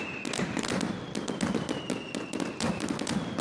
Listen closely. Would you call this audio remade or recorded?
remade